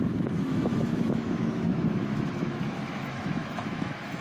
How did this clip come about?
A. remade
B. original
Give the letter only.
A